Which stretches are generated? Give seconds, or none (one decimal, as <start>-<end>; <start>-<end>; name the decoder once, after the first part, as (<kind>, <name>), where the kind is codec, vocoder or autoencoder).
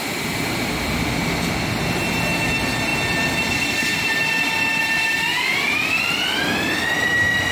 none